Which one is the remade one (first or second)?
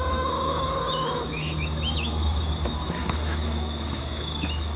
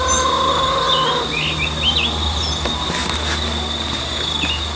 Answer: first